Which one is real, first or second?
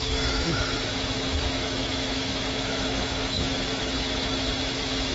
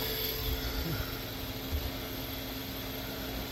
second